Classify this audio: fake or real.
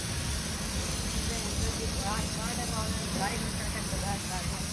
fake